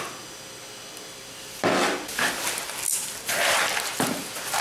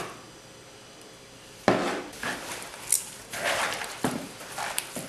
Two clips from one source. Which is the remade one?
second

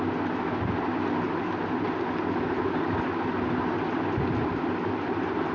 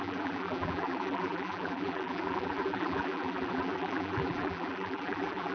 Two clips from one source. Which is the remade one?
second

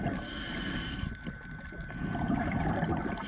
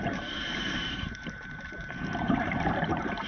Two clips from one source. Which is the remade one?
second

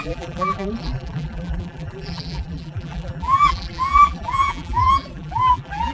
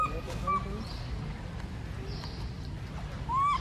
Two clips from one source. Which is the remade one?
first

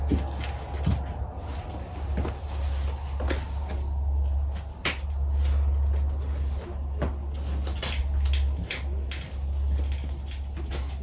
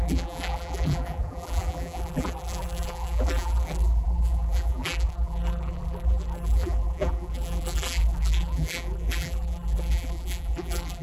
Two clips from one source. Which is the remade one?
second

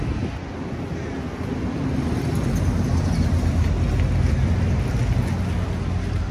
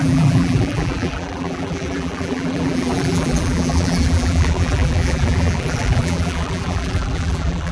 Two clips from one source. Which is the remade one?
second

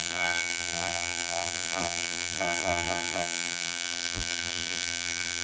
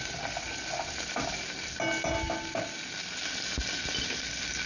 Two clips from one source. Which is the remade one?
first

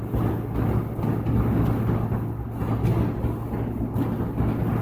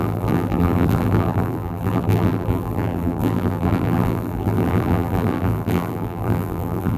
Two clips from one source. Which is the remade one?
second